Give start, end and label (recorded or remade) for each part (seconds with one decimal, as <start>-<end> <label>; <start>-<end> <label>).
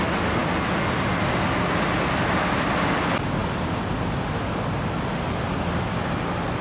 0.0-6.6 recorded